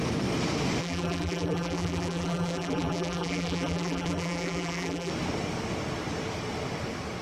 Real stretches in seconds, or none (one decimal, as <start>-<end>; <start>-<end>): 0.0-0.8; 5.1-7.2